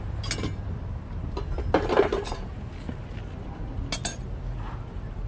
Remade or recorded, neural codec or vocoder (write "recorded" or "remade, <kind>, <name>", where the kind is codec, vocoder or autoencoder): recorded